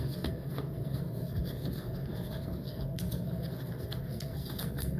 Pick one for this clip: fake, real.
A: fake